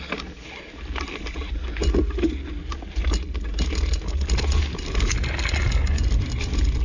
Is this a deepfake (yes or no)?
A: no